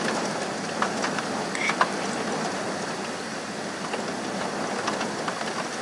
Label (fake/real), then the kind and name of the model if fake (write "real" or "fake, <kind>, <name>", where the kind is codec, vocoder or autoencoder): real